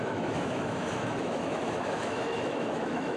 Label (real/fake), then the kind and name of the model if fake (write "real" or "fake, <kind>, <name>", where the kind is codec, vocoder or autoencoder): fake, autoencoder, DAC-VAE